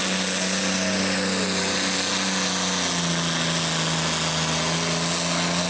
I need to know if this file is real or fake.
real